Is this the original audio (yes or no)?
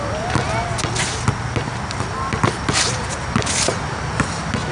yes